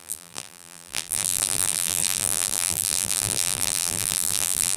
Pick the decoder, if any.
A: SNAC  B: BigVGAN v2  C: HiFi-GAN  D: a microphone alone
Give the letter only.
B